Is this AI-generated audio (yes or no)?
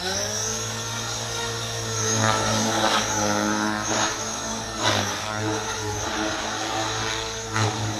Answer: yes